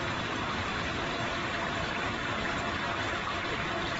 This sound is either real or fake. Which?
real